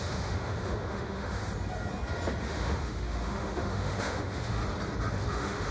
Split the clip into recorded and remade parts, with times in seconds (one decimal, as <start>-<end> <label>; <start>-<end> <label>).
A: 0.0-1.4 remade; 1.4-2.4 recorded; 2.4-4.6 remade; 4.6-5.1 recorded; 5.1-5.7 remade